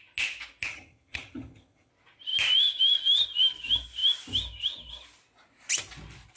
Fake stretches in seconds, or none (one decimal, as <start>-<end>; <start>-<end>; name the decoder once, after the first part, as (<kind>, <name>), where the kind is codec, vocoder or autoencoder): 0.7-1.9 (vocoder, HiFi-GAN)